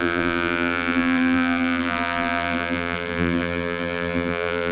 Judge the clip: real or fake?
fake